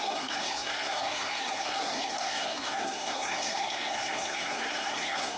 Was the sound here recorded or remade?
remade